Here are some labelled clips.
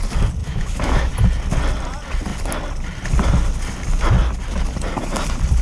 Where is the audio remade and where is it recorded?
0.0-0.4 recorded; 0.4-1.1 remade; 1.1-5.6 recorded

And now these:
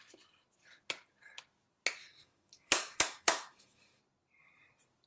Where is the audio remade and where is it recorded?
0.0-2.0 recorded; 2.0-4.0 remade; 4.0-5.1 recorded